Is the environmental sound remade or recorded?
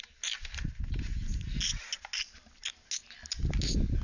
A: recorded